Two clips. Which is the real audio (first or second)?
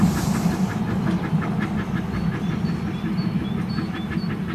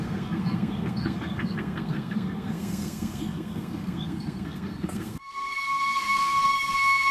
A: first